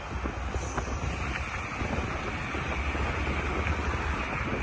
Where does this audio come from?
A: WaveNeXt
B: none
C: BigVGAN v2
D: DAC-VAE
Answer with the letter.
B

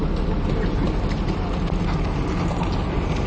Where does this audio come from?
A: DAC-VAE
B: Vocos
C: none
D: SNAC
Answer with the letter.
C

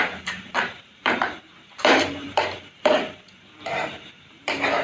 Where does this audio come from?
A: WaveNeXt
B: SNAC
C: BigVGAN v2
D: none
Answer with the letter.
C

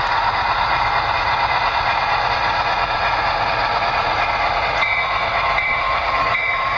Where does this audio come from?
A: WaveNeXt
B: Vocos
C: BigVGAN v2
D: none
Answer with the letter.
B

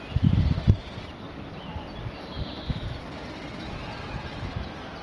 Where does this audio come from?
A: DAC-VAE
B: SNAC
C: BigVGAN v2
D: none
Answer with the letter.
D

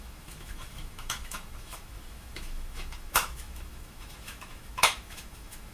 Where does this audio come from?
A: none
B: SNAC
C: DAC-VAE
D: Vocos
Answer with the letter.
C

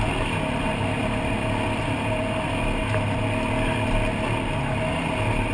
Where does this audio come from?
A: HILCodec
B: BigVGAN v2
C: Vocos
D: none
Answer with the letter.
D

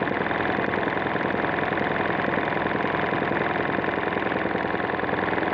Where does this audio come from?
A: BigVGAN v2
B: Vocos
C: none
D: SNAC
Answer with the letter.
C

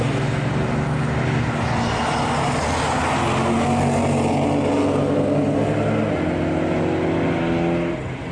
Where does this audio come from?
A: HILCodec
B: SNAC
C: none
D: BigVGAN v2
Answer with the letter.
C